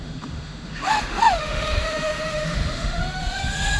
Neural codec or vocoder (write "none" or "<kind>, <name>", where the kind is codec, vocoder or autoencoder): autoencoder, DAC-VAE